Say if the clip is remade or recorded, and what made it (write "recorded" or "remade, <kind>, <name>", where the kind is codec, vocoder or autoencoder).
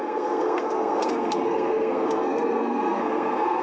remade, codec, SNAC